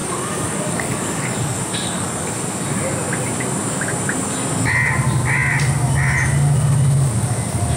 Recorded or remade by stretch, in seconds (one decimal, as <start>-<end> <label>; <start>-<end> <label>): 0.0-2.3 remade; 2.3-7.8 recorded